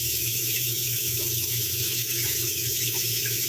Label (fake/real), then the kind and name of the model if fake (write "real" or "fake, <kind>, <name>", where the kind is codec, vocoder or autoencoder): fake, autoencoder, DAC-VAE